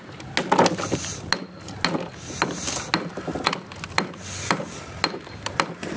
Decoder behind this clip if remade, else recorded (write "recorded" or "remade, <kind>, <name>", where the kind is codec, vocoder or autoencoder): recorded